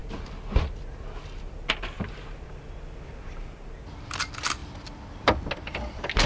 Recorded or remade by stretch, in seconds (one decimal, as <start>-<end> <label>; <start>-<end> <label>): 0.0-6.3 recorded